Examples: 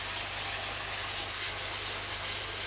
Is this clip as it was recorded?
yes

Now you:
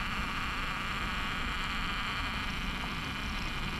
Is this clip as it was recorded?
yes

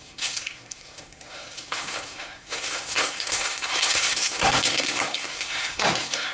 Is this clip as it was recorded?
no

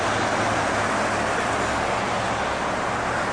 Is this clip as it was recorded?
yes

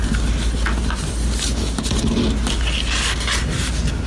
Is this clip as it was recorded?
yes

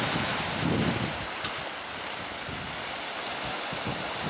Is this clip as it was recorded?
yes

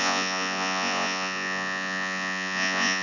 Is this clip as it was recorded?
no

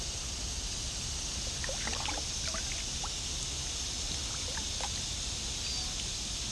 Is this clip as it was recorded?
yes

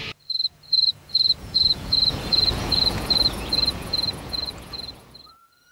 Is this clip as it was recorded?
no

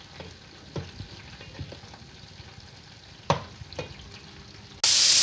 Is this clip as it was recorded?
yes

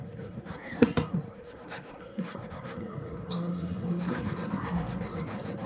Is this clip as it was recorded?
no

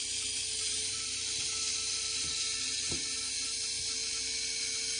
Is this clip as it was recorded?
yes